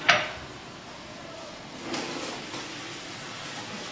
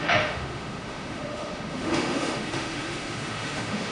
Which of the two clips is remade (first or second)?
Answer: second